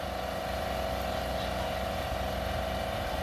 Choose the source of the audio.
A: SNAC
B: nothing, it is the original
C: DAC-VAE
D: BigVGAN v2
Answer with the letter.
B